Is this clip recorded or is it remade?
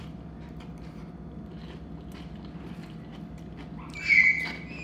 recorded